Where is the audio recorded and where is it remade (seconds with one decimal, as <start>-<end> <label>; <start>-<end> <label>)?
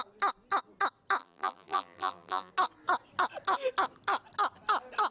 0.0-1.2 recorded; 1.2-2.5 remade; 2.5-5.1 recorded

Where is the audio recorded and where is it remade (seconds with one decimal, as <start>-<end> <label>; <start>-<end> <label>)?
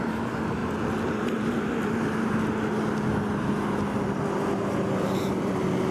0.0-5.9 recorded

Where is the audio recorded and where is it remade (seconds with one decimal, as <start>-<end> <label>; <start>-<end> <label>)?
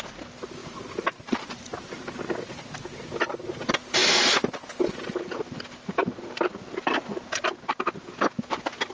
0.0-0.6 recorded; 0.6-2.0 remade; 2.0-8.9 recorded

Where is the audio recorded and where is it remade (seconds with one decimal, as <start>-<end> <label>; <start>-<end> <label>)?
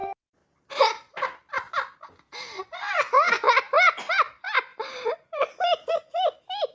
0.0-6.7 recorded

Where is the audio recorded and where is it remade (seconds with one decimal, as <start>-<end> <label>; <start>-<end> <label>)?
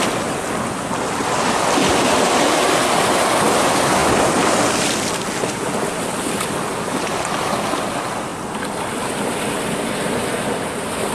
0.0-11.1 recorded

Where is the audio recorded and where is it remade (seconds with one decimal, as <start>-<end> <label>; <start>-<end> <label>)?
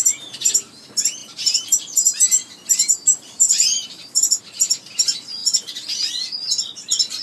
0.0-1.2 recorded; 1.2-4.4 remade; 4.4-5.4 recorded; 5.4-6.1 remade; 6.1-7.2 recorded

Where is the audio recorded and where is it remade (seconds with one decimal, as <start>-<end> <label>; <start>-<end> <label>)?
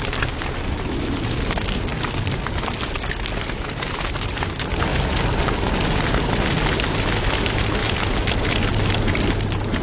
0.0-1.9 recorded; 1.9-2.8 remade; 2.8-9.8 recorded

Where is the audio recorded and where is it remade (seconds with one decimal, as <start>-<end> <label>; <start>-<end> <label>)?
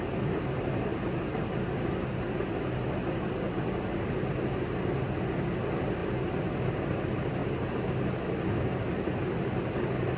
0.0-10.2 recorded